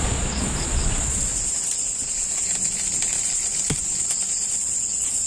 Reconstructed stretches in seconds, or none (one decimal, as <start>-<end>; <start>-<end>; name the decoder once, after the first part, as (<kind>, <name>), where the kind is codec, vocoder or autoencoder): 0.0-1.3 (vocoder, Vocos); 4.5-5.3